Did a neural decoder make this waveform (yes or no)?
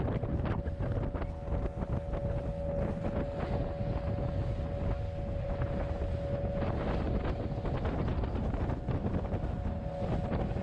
no